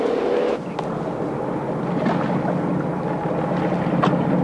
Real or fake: real